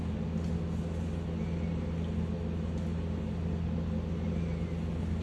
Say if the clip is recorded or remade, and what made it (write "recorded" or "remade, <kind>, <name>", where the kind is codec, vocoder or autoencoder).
recorded